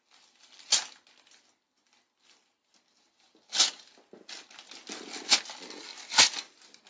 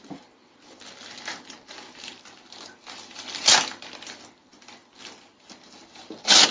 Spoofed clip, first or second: second